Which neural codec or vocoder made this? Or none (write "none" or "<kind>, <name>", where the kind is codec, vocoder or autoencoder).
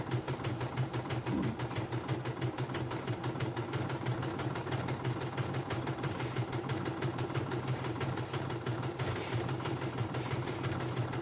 vocoder, BigVGAN v2